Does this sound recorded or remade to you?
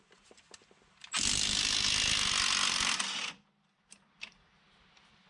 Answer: recorded